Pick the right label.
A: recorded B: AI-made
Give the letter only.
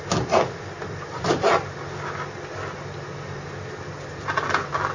A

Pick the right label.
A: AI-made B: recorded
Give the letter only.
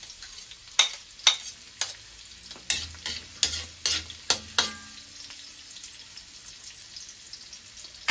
B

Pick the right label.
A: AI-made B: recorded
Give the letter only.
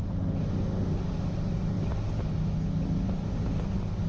B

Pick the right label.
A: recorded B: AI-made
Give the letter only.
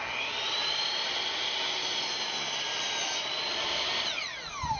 A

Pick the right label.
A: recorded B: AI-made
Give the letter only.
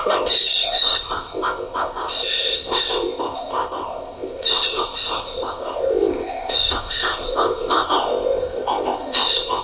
B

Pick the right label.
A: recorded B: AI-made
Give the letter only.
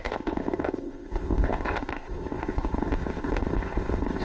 B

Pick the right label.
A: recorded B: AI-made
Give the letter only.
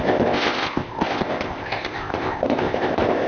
B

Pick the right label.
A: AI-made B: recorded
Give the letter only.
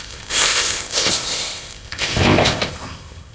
A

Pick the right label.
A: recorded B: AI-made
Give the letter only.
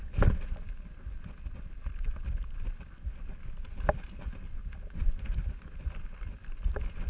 A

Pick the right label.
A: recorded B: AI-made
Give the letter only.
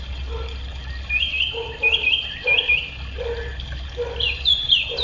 A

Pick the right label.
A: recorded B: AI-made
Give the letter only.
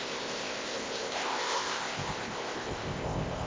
B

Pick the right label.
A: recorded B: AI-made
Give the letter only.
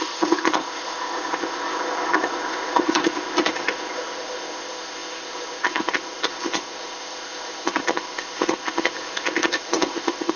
B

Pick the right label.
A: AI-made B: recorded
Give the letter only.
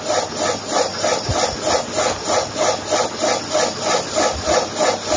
B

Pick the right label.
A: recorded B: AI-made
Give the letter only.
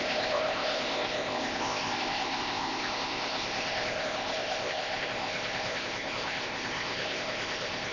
B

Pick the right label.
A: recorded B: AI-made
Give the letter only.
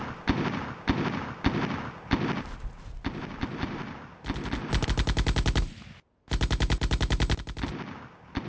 A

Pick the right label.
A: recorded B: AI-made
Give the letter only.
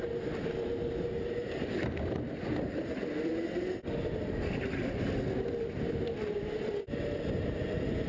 A